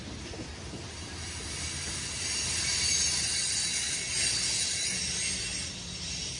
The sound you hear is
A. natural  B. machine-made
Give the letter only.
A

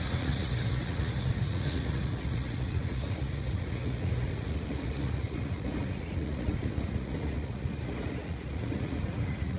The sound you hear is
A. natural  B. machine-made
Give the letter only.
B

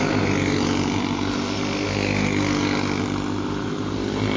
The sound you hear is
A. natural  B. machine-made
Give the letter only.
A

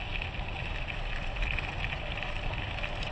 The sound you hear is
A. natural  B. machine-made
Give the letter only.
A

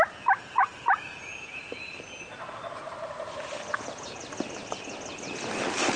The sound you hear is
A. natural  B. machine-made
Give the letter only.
A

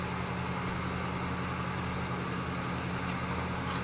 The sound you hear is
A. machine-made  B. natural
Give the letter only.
B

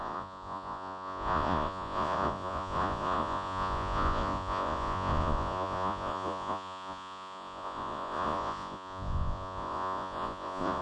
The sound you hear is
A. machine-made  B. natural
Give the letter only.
A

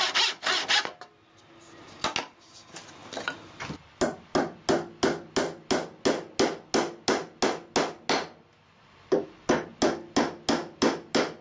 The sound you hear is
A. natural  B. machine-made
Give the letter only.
A